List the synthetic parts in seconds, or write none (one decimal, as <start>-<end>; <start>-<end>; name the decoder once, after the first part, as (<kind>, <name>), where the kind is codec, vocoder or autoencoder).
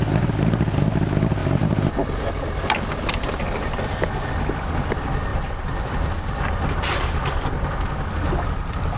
1.4-1.9 (vocoder, BigVGAN v2); 5.3-6.5